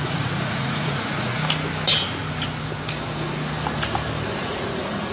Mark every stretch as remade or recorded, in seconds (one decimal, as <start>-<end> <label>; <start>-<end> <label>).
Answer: 0.0-1.3 remade; 1.3-4.4 recorded; 4.4-5.1 remade